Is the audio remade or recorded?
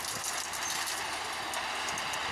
recorded